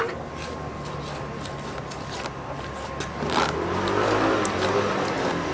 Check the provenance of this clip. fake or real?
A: real